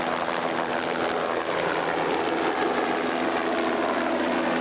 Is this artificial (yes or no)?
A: no